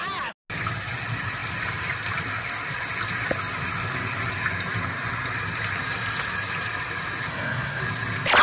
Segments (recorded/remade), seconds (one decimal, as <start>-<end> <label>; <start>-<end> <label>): 0.0-7.3 recorded; 7.3-7.8 remade; 7.8-8.4 recorded